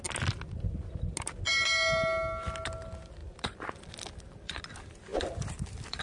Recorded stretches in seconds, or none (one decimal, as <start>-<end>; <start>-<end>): 0.0-3.2; 4.6-5.1